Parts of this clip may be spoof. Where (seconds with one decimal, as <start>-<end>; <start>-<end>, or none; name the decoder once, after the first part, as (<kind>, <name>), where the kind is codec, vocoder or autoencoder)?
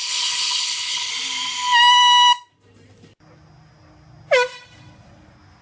0.0-1.1 (codec, HILCodec)